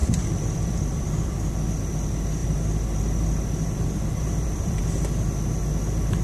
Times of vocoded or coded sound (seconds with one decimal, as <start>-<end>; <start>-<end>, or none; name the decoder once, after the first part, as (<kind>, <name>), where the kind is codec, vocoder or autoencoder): 0.0-1.9 (vocoder, BigVGAN v2); 2.4-4.8